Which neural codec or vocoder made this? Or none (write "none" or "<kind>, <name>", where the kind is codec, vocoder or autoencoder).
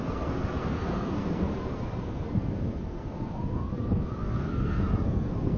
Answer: codec, SNAC